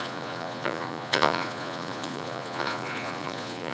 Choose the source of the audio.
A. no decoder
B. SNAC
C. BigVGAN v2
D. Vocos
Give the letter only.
D